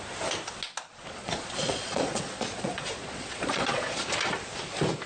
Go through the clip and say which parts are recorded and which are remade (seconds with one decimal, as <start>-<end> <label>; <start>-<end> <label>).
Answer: 0.0-0.9 recorded; 0.9-4.0 remade; 4.0-5.1 recorded